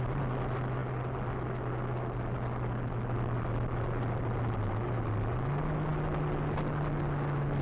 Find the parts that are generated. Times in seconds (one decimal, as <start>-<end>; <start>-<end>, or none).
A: none